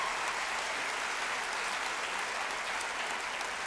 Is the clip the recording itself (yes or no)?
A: yes